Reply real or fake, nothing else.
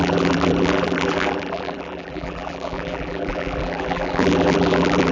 fake